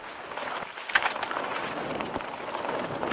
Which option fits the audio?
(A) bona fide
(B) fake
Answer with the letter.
A